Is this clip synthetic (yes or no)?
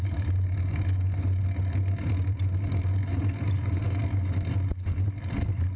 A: no